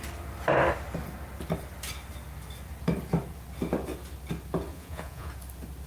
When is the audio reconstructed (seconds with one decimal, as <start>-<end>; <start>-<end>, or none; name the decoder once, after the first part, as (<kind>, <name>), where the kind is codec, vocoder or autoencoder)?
4.7-5.3 (vocoder, Vocos)